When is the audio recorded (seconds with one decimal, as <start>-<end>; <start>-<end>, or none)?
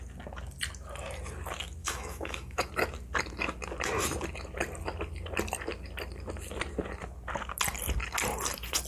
0.0-1.8; 2.7-8.9